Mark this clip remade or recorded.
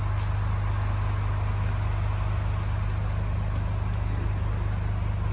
recorded